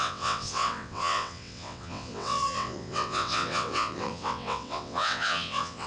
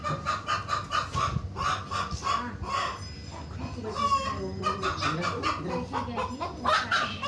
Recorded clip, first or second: second